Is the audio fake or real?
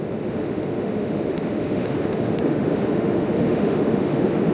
fake